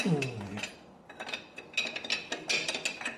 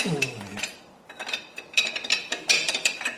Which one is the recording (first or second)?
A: first